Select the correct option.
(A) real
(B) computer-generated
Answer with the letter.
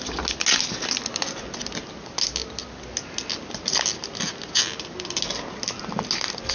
A